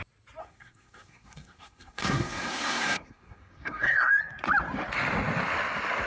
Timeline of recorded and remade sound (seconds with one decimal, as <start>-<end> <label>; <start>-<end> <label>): 0.0-0.4 recorded; 0.4-4.1 remade; 4.1-6.1 recorded